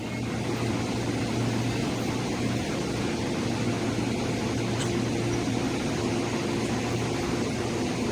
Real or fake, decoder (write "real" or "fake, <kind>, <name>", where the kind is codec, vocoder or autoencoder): real